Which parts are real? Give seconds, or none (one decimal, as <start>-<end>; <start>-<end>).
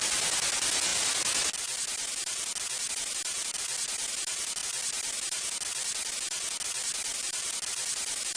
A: 0.0-8.4